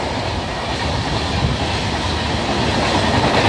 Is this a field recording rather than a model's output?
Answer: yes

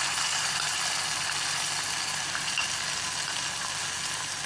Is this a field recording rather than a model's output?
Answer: yes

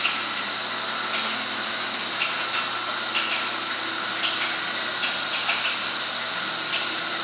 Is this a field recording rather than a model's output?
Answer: yes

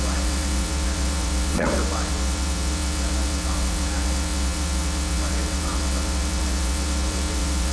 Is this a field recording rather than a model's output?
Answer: no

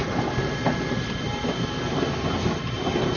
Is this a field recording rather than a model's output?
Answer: yes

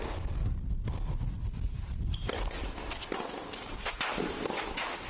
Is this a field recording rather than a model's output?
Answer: yes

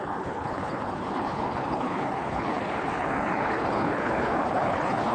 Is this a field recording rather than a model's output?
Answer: no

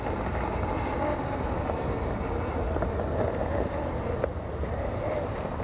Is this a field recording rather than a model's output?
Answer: yes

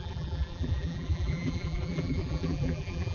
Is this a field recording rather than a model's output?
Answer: no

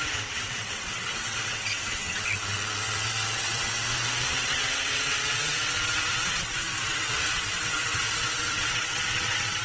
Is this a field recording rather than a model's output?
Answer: no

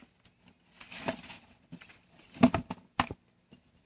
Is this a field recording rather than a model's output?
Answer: yes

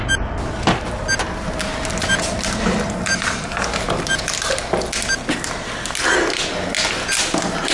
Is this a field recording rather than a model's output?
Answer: yes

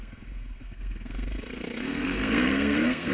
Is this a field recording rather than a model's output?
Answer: no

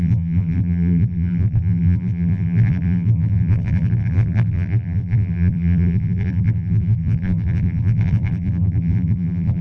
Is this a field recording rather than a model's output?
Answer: no